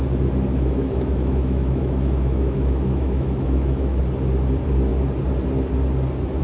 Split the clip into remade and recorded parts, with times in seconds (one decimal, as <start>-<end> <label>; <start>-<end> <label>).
0.0-0.5 recorded; 0.5-4.0 remade; 4.0-6.4 recorded